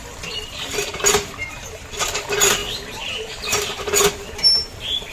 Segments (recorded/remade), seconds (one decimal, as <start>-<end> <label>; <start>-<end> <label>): 0.0-0.9 remade; 0.9-1.5 recorded; 1.5-5.1 remade